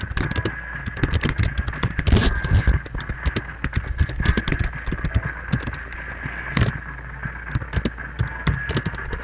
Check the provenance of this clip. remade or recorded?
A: recorded